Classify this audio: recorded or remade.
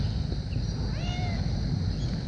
recorded